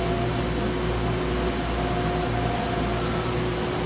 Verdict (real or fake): real